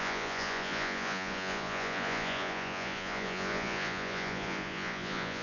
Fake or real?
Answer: fake